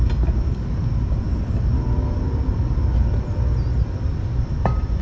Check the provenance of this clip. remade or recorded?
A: recorded